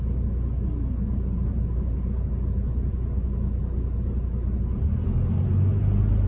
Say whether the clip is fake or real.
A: real